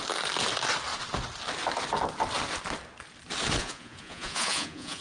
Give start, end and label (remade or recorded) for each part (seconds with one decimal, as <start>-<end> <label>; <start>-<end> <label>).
0.0-3.6 recorded; 3.6-5.0 remade